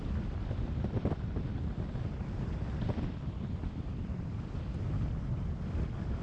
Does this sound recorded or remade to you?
recorded